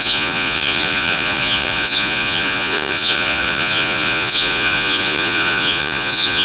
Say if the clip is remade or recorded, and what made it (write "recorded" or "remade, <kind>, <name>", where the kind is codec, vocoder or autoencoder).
remade, vocoder, Vocos